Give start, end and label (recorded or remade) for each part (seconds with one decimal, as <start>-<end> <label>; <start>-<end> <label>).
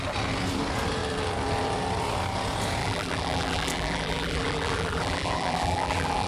0.0-2.8 recorded; 2.8-6.3 remade